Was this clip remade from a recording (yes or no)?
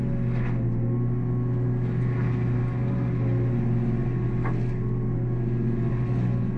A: no